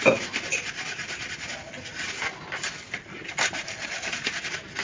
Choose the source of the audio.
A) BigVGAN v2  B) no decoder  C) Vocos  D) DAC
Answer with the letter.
B